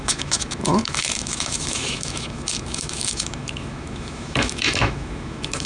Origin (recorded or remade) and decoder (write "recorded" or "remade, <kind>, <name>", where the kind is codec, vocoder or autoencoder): remade, autoencoder, DAC-VAE